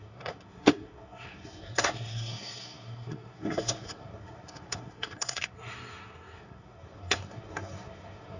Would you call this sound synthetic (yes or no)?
yes